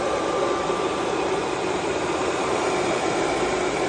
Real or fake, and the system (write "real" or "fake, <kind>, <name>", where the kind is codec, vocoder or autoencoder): fake, vocoder, BigVGAN v2